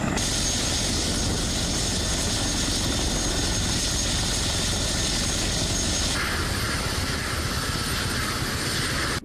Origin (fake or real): real